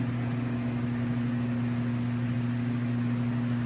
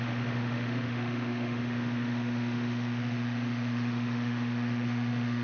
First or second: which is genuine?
first